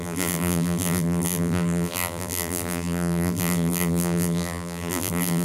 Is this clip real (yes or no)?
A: no